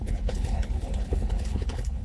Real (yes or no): no